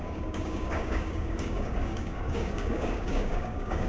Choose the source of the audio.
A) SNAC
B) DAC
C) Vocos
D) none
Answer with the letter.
B